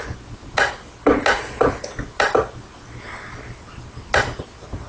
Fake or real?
real